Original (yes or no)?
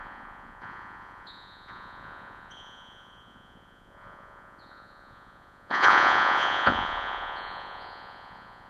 no